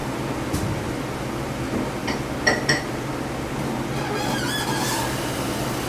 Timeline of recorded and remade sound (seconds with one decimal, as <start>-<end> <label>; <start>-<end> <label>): 0.0-5.9 recorded